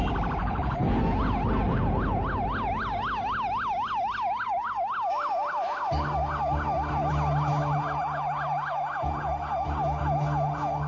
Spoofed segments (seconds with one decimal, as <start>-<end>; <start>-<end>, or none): 0.4-1.0